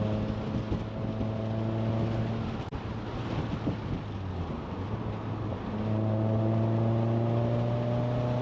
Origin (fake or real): real